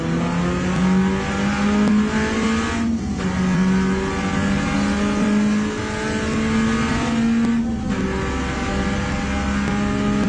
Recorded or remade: recorded